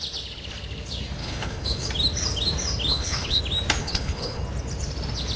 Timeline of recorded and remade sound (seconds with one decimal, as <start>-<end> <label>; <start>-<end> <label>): 0.0-1.2 recorded; 1.2-1.9 remade; 1.9-2.9 recorded; 2.9-3.4 remade; 3.4-3.8 recorded; 3.8-4.4 remade; 4.4-5.4 recorded